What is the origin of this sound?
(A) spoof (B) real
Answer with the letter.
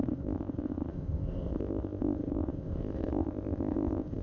A